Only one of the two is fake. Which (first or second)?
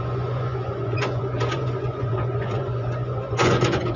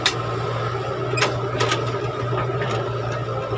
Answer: first